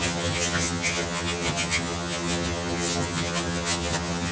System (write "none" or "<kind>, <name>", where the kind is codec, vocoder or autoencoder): vocoder, HiFi-GAN